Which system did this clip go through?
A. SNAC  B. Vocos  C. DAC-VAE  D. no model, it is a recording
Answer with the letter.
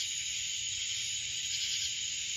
D